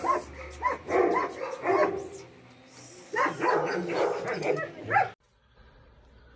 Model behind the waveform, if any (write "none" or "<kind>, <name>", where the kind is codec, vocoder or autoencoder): none